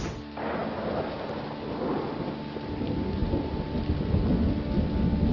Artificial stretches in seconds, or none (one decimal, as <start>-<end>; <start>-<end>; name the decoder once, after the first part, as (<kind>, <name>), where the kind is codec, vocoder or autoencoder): none